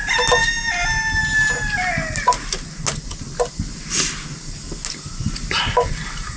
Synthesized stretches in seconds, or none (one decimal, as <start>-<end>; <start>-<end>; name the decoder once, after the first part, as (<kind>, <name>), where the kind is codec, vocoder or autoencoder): none